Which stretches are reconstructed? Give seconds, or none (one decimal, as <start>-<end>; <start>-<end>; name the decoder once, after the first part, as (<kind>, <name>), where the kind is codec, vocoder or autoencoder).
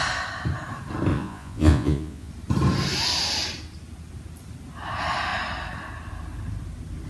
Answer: 1.1-2.3 (vocoder, Vocos)